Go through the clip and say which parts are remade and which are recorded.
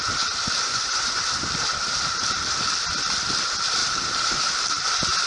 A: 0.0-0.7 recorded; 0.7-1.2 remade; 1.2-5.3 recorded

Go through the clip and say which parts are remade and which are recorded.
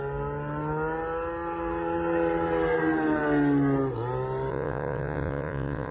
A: 0.0-4.5 recorded; 4.5-5.9 remade